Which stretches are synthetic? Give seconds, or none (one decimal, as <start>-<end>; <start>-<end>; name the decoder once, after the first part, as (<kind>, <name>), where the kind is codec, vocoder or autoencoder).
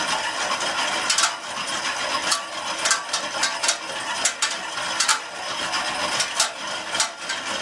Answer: 5.1-5.7 (vocoder, BigVGAN v2)